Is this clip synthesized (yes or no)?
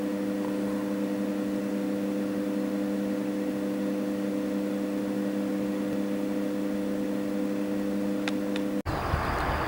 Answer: no